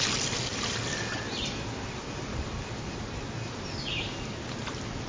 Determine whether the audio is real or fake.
real